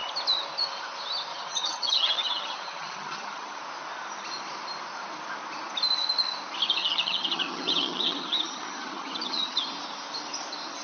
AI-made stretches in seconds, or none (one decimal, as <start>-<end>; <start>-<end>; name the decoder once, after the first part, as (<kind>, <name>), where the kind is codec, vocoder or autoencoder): 1.3-3.6 (vocoder, HiFi-GAN); 6.8-9.6